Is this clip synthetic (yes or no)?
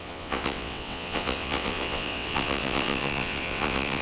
yes